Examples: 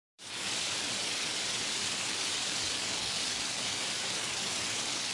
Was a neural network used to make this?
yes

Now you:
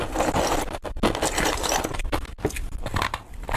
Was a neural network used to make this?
no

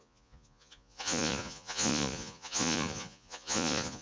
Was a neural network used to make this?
yes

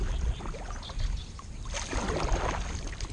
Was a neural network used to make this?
no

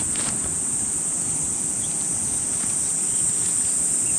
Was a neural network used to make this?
no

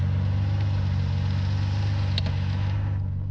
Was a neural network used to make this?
no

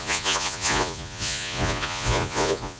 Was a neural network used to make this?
yes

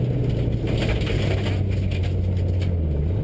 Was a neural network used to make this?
no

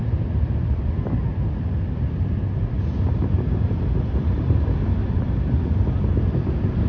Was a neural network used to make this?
no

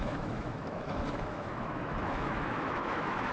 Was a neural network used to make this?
yes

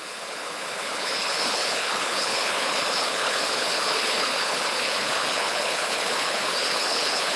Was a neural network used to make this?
yes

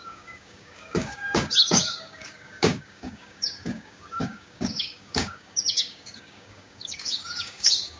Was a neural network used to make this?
yes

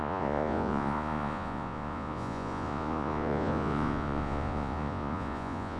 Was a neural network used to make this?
yes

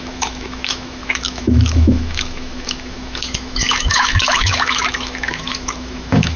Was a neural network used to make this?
yes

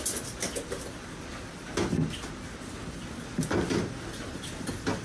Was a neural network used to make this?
no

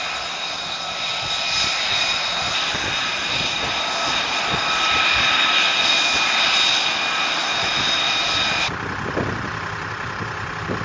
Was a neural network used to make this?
no